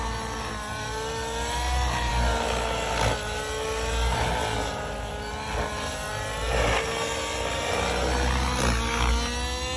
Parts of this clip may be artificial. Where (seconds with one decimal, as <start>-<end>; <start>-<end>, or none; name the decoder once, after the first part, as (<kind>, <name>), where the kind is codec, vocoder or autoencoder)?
none

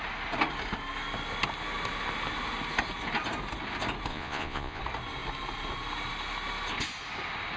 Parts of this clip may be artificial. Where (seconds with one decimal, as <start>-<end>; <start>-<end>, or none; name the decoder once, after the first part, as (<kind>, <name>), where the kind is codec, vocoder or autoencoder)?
4.1-4.8 (vocoder, Vocos)

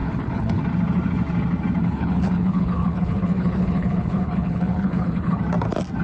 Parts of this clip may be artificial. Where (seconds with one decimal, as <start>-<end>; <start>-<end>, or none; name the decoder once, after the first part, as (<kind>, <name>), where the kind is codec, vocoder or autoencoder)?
0.0-0.6 (codec, HILCodec); 1.8-5.4

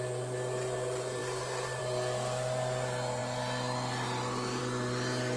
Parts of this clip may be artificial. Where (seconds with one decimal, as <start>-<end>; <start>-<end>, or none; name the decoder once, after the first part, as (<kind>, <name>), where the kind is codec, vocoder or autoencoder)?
none

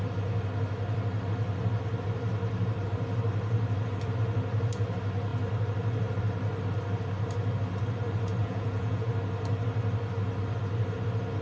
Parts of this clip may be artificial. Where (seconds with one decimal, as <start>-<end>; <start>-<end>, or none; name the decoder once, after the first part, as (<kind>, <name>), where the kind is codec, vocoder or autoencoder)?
8.4-9.1 (vocoder, Vocos)

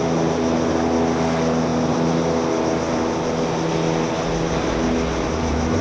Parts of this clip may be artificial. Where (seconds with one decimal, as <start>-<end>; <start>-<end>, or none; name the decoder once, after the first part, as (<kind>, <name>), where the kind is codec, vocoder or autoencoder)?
none

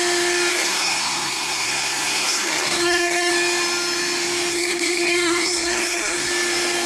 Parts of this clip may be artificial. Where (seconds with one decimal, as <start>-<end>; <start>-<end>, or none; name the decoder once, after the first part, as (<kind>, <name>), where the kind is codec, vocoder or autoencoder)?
0.5-3.3 (codec, SNAC); 4.5-6.3